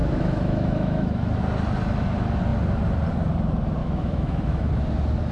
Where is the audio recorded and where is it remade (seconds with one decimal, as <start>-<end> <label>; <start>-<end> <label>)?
0.0-1.4 remade; 1.4-3.8 recorded; 3.8-4.7 remade; 4.7-5.3 recorded